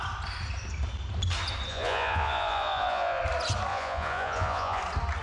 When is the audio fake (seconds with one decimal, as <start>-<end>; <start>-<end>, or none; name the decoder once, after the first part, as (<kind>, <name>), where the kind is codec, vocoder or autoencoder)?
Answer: 1.7-3.2 (vocoder, Vocos); 3.7-4.8